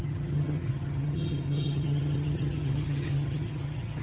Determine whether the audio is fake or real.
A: fake